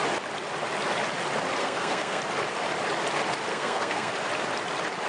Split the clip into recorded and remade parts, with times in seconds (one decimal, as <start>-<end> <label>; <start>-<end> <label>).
0.0-1.6 recorded; 1.6-2.2 remade; 2.2-3.5 recorded; 3.5-4.1 remade; 4.1-5.1 recorded